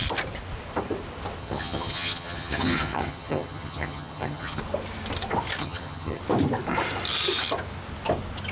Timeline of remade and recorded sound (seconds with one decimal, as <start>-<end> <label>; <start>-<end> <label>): 0.0-1.4 recorded; 1.4-4.6 remade; 4.6-5.6 recorded; 5.6-6.2 remade; 6.2-8.5 recorded